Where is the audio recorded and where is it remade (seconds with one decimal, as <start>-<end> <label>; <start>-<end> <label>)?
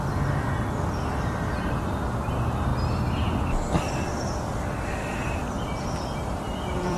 0.0-5.0 recorded; 5.0-7.0 remade